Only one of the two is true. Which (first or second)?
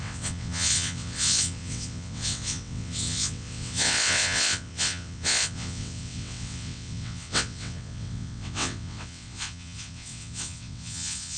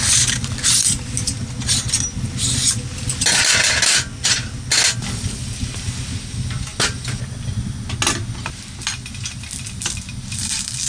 second